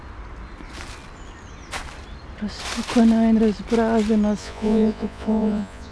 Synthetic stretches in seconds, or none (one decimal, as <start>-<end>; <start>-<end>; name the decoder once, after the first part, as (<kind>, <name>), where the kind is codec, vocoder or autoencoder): 4.4-5.9 (vocoder, Vocos)